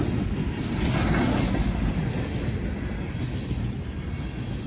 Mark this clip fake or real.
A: real